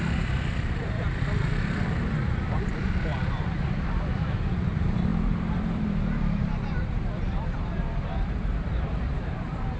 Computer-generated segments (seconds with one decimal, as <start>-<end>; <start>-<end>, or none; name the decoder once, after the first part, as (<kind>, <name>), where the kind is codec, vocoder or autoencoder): 0.0-9.8 (vocoder, BigVGAN v2)

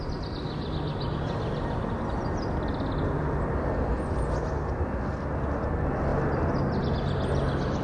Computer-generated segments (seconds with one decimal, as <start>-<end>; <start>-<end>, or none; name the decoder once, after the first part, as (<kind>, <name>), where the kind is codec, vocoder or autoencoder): none